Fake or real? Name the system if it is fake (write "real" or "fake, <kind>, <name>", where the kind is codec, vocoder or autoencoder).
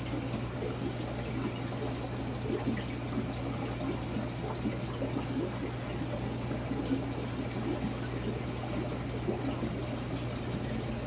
real